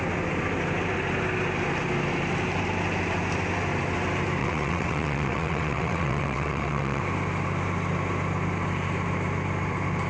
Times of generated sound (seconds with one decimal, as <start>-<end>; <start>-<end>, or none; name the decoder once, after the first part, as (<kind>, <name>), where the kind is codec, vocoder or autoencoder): 4.4-7.0 (vocoder, WaveNeXt)